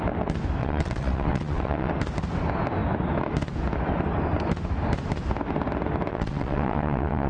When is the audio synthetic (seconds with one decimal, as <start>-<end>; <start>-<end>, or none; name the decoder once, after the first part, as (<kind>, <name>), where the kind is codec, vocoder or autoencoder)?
0.6-1.9 (vocoder, WaveNeXt); 6.1-7.3